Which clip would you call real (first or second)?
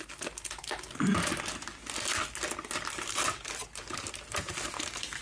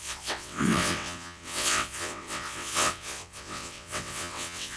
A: first